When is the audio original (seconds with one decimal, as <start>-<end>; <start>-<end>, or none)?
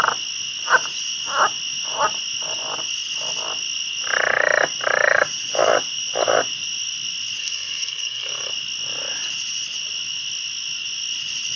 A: 0.0-7.4; 8.5-11.6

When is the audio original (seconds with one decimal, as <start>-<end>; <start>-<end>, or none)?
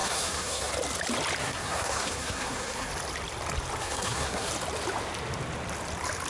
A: 0.7-1.4; 2.9-3.8; 4.5-6.3